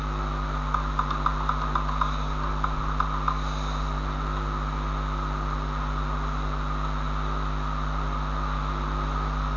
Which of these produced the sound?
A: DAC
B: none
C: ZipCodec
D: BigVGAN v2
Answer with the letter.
B